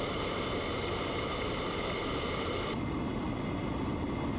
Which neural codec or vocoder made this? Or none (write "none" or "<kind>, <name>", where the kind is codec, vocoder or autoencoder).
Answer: none